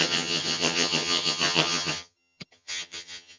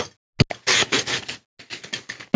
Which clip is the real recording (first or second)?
second